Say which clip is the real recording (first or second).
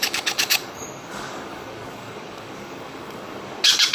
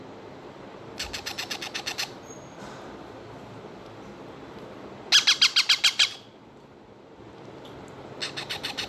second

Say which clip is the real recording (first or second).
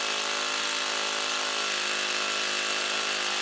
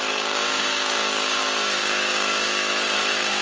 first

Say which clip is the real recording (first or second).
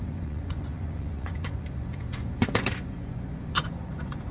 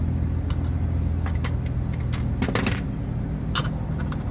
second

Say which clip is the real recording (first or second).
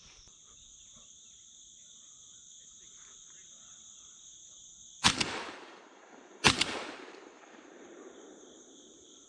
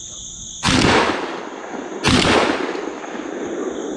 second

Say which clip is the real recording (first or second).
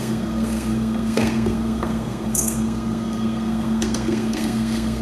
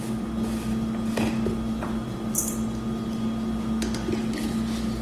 second